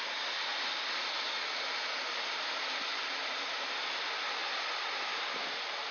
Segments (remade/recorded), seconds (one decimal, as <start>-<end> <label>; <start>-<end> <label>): 0.0-0.5 remade; 0.5-1.9 recorded; 1.9-2.9 remade; 2.9-3.6 recorded; 3.6-4.4 remade; 4.4-5.2 recorded; 5.2-5.9 remade